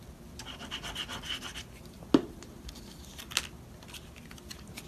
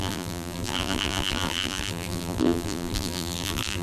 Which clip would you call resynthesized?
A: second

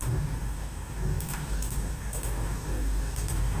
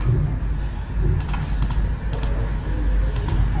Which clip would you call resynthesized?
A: first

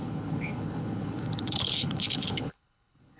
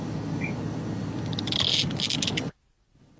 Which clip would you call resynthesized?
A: first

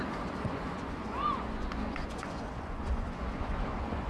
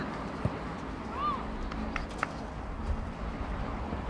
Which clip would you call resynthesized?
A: first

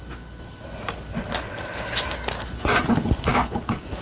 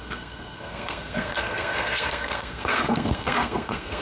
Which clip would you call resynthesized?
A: second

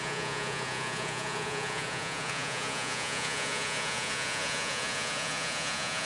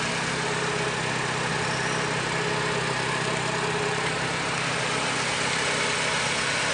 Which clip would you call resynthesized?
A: first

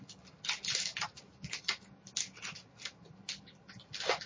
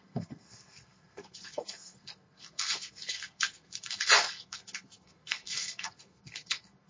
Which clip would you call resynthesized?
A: second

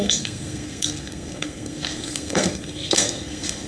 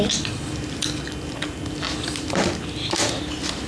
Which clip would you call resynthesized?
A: first